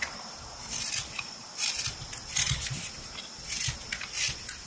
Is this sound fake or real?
real